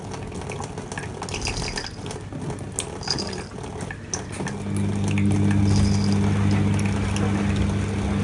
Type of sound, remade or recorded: recorded